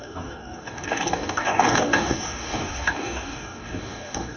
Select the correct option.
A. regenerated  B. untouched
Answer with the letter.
A